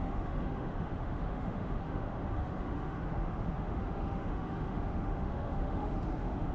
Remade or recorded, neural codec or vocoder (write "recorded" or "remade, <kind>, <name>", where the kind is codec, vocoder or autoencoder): remade, autoencoder, DAC-VAE